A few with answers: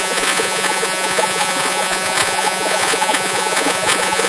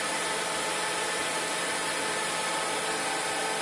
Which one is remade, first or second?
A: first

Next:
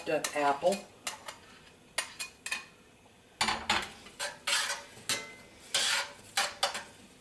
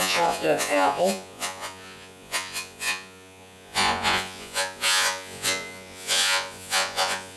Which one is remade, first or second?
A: second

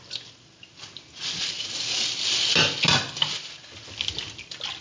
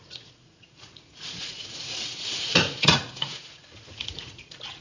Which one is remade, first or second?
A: second